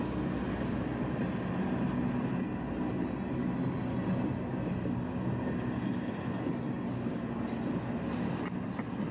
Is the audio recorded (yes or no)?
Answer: yes